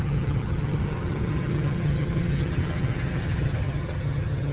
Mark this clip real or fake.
fake